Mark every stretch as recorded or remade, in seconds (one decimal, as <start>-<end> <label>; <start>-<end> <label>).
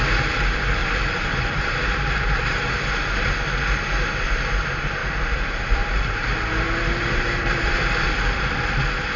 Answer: 0.0-0.8 recorded; 0.8-3.2 remade; 3.2-5.0 recorded; 5.0-7.9 remade; 7.9-9.2 recorded